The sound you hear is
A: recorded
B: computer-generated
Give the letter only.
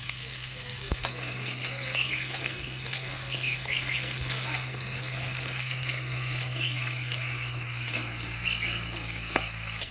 B